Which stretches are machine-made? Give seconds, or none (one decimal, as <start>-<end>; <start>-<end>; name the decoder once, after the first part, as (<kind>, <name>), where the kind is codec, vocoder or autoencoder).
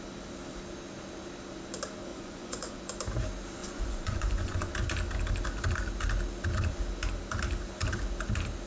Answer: 2.1-2.8 (vocoder, Vocos); 3.6-4.7